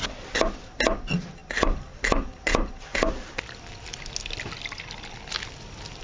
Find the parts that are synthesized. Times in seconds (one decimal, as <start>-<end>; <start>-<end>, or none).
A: none